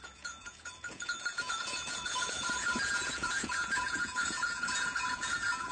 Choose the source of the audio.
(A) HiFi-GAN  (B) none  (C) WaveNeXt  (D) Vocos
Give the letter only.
D